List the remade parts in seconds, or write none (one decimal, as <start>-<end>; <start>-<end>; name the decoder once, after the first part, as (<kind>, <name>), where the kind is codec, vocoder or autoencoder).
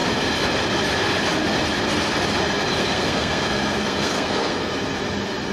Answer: 2.8-4.7 (codec, SNAC)